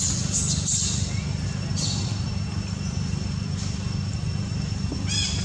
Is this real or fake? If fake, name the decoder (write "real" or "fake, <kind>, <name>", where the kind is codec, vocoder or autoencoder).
real